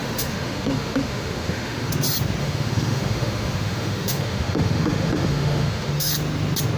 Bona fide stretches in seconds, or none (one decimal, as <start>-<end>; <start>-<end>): 1.9-2.4; 6.1-6.8